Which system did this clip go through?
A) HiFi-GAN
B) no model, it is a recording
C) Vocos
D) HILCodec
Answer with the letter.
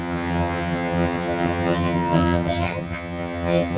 A